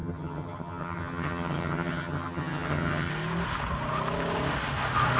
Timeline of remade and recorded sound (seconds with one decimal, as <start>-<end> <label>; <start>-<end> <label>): 0.0-3.1 remade; 3.1-5.2 recorded